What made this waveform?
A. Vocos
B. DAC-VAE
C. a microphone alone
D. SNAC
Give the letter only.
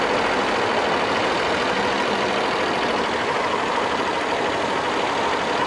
C